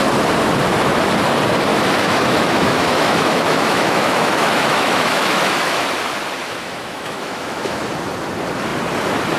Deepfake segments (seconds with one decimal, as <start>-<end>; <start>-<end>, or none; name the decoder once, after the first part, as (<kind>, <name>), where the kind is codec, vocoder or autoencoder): 1.7-5.8 (autoencoder, DAC-VAE); 6.4-7.8